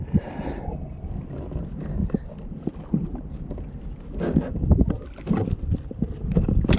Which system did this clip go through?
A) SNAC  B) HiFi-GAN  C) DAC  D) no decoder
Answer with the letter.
D